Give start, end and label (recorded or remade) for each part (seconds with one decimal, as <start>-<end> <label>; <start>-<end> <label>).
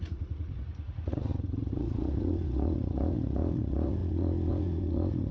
0.0-5.3 remade